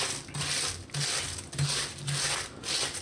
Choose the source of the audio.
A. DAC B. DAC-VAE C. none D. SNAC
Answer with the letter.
C